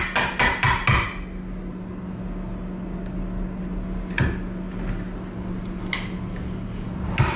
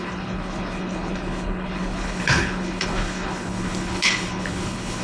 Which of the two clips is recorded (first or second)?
first